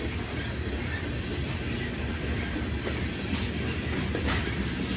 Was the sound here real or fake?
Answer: real